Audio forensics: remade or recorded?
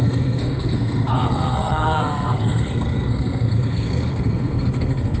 remade